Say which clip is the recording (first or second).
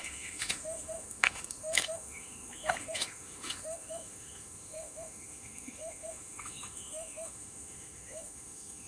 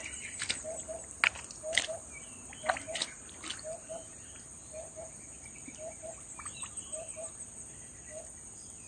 second